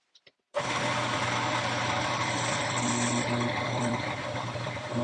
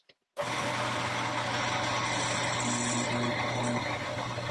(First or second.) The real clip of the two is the second